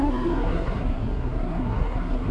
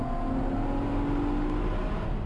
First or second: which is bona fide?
second